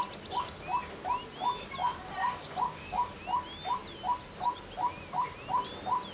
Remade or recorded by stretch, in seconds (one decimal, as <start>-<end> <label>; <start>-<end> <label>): 0.0-2.2 recorded; 2.2-3.2 remade; 3.2-6.1 recorded